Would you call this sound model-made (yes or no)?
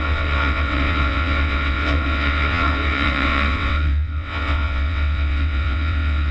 yes